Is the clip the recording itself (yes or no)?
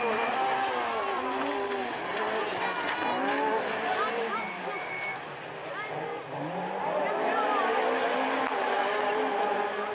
yes